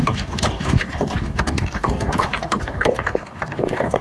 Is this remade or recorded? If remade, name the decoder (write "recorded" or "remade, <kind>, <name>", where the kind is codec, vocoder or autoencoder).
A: remade, codec, DAC